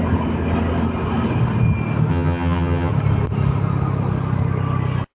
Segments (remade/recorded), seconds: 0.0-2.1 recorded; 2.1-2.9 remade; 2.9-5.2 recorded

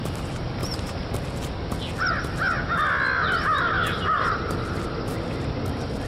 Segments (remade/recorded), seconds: 0.0-6.1 recorded

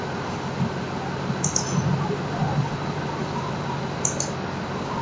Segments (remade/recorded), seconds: 0.0-5.0 recorded

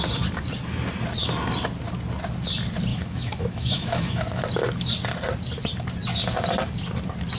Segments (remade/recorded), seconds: 0.0-2.9 recorded; 2.9-4.4 remade; 4.4-7.4 recorded

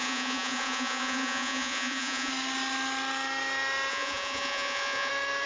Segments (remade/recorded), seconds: 0.0-2.3 remade; 2.3-3.9 recorded; 3.9-5.1 remade; 5.1-5.5 recorded

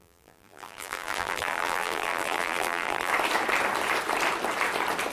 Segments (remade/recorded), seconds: 0.0-3.1 remade; 3.1-5.1 recorded

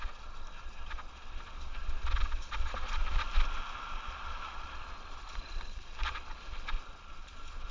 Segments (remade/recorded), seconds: 0.0-3.0 recorded; 3.0-6.9 remade; 6.9-7.7 recorded

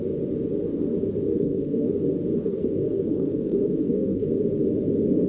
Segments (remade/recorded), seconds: 0.0-1.3 recorded; 1.3-1.9 remade; 1.9-2.5 recorded; 2.5-4.3 remade; 4.3-5.3 recorded